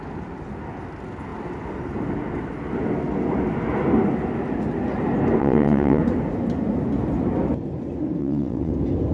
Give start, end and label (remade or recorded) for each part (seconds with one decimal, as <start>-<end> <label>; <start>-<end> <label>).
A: 0.0-5.4 recorded; 5.4-6.0 remade; 6.0-8.2 recorded; 8.2-8.7 remade; 8.7-9.1 recorded